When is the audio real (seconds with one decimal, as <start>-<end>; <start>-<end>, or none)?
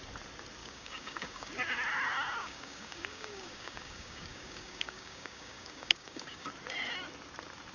0.0-0.6; 1.5-2.4; 6.5-7.7